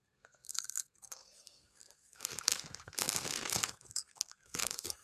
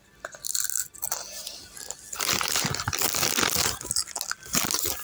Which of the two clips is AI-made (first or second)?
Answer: first